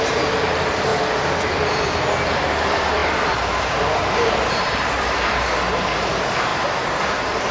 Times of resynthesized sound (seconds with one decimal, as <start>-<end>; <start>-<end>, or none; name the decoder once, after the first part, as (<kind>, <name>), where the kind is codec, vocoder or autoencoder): 0.0-0.9 (vocoder, BigVGAN v2); 2.4-7.5